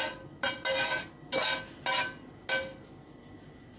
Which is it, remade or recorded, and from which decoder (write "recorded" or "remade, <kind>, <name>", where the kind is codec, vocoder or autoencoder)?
recorded